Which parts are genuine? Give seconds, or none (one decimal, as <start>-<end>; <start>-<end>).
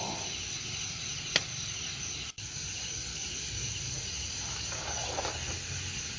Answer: 0.0-3.1; 3.7-4.5; 5.1-6.2